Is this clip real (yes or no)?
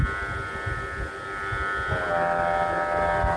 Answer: yes